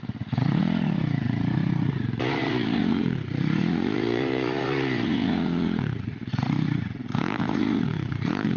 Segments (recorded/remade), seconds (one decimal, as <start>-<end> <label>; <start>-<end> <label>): 0.0-8.6 remade